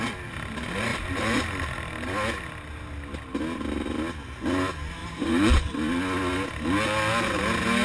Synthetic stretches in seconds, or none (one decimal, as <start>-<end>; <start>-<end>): 0.9-1.4; 5.0-5.6